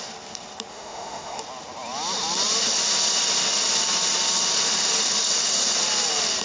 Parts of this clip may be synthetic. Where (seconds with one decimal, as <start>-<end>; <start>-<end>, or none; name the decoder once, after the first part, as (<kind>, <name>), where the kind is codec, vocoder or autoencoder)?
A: 0.7-1.4 (autoencoder, DAC-VAE)